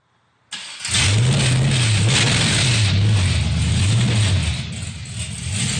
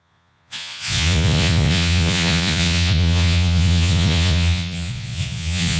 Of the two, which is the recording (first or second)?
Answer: first